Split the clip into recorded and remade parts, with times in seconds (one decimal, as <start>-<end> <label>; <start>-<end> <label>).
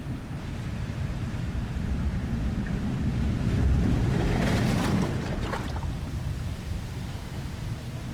0.0-2.2 remade; 2.2-4.0 recorded; 4.0-8.1 remade